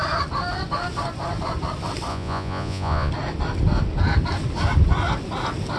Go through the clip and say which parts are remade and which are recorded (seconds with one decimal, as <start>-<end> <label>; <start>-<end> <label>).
0.0-2.1 recorded; 2.1-3.1 remade; 3.1-5.8 recorded